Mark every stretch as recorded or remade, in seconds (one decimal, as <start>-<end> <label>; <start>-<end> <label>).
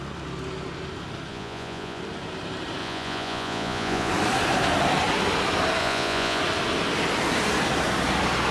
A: 0.0-1.3 recorded; 1.3-2.0 remade; 2.0-2.8 recorded; 2.8-4.1 remade; 4.1-5.8 recorded; 5.8-6.4 remade; 6.4-8.5 recorded